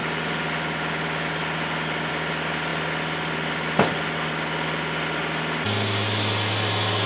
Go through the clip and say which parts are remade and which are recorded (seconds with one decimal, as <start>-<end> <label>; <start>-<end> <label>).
0.0-7.1 recorded